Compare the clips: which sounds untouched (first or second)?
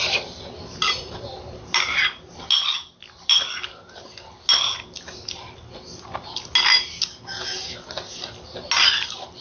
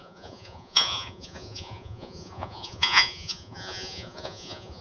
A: first